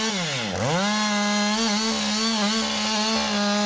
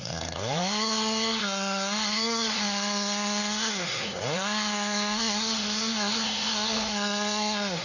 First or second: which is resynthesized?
second